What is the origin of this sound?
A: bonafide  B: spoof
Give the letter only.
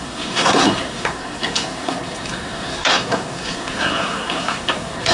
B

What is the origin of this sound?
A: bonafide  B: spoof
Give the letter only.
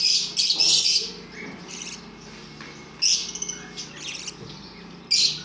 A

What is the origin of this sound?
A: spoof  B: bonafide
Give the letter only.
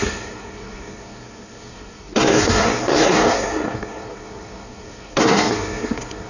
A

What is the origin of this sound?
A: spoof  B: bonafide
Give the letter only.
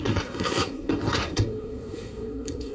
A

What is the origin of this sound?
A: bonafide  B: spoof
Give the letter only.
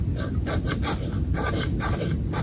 A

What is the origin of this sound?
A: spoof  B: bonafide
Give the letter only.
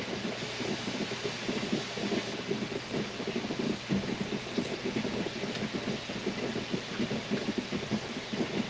B